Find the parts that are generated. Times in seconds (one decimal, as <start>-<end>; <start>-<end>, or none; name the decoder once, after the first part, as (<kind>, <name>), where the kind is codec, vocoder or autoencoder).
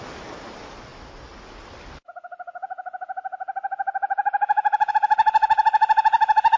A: none